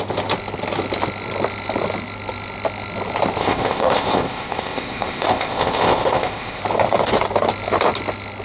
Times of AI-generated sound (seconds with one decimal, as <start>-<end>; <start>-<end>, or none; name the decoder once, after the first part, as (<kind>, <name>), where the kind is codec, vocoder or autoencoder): 3.4-6.6 (codec, ZipCodec)